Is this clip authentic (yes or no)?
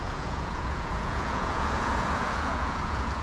no